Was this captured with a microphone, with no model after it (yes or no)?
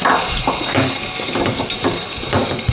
yes